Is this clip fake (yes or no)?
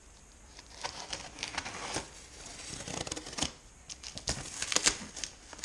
no